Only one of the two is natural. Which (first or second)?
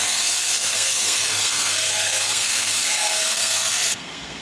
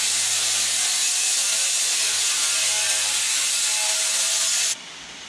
second